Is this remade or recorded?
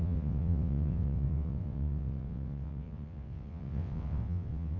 remade